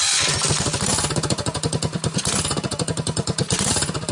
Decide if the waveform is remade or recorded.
recorded